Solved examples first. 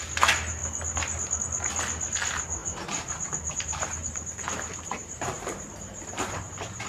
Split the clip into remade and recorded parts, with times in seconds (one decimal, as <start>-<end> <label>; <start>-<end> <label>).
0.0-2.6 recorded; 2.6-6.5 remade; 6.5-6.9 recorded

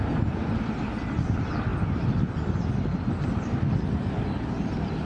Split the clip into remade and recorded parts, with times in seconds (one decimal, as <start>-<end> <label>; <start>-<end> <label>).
0.0-5.0 recorded

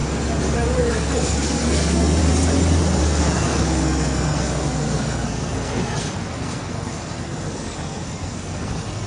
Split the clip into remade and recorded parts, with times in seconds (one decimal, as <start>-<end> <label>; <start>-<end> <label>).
0.0-0.9 recorded; 0.9-2.2 remade; 2.2-3.0 recorded; 3.0-9.1 remade

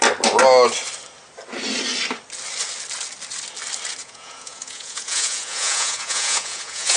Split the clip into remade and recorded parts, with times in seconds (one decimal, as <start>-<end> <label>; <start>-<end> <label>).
0.0-4.0 recorded; 4.0-7.0 remade

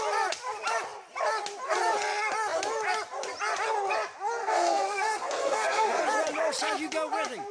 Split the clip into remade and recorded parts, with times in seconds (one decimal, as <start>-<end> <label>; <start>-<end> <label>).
0.0-4.4 recorded; 4.4-6.0 remade; 6.0-7.5 recorded

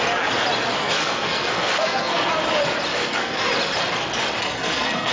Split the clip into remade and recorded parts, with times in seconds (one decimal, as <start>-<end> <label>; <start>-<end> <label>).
0.0-0.8 recorded; 0.8-2.3 remade; 2.3-2.9 recorded; 2.9-3.5 remade; 3.5-4.4 recorded; 4.4-5.1 remade